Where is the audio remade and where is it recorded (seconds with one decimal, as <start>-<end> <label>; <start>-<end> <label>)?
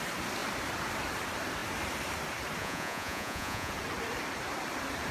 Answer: 0.0-2.6 recorded; 2.6-3.7 remade; 3.7-5.1 recorded